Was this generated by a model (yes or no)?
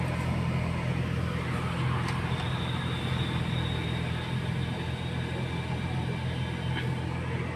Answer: no